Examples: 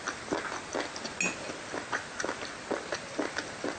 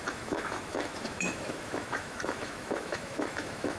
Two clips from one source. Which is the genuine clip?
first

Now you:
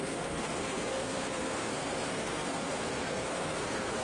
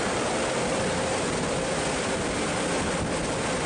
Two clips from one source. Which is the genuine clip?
second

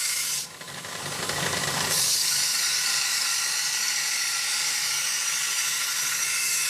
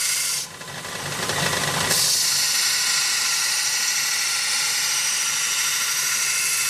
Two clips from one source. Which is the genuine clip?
second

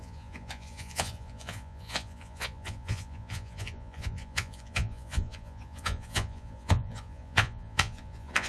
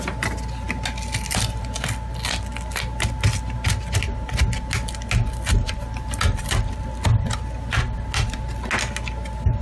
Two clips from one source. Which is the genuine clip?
second